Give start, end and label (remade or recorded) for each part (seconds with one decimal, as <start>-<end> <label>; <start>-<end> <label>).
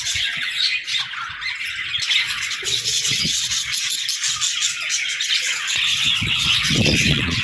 0.0-0.6 remade; 0.6-2.2 recorded; 2.2-3.7 remade; 3.7-5.4 recorded; 5.4-7.4 remade